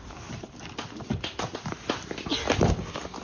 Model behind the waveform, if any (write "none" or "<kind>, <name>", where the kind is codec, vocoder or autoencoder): none